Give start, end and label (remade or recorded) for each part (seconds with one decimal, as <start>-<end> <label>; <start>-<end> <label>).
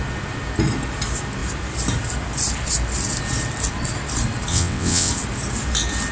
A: 0.0-4.5 recorded; 4.5-5.1 remade; 5.1-6.1 recorded